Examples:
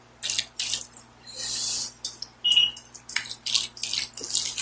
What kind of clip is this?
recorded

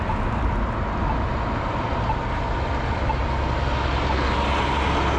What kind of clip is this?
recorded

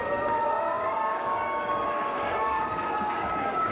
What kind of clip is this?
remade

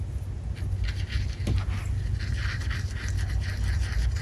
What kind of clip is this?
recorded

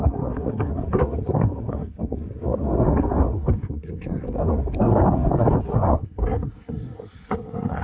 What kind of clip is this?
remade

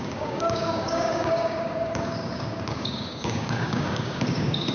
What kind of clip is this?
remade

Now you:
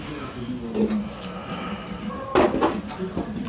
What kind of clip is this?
recorded